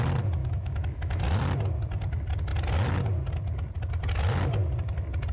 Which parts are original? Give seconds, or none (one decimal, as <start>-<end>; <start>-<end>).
0.0-0.4; 1.2-5.3